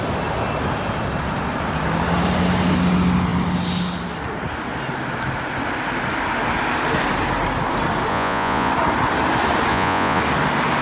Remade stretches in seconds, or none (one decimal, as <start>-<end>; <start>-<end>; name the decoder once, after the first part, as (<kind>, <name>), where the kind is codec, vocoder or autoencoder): 8.1-8.7 (vocoder, Vocos); 9.7-10.2